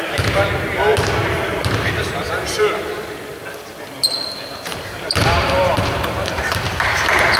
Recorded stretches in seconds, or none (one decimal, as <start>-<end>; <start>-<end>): 0.9-1.6; 3.4-4.5